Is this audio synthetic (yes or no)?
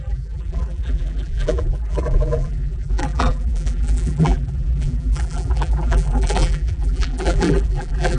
yes